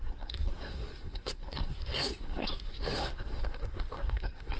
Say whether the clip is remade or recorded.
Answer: remade